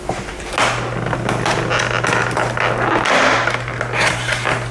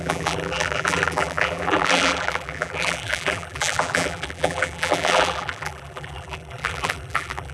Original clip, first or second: first